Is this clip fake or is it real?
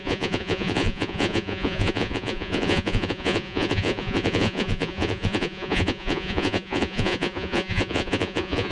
fake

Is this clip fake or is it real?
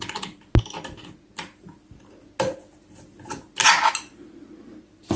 real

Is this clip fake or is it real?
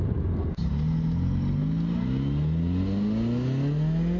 real